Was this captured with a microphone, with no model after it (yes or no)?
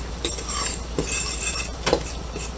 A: no